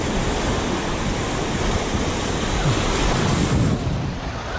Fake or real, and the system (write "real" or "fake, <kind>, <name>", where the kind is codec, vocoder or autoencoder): real